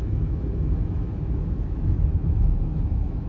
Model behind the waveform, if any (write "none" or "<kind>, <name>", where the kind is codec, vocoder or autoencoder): autoencoder, DAC-VAE